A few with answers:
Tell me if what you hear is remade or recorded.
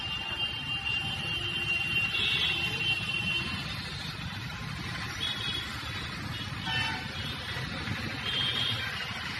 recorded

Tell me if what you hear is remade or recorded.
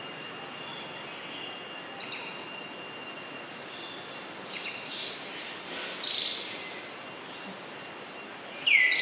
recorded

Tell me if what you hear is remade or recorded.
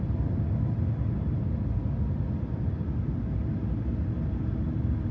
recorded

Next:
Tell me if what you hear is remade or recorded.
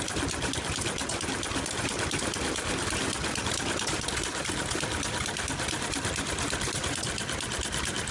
remade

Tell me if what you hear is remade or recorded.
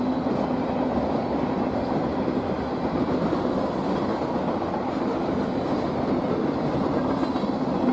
recorded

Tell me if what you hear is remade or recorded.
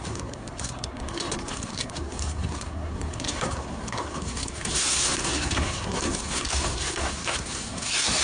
remade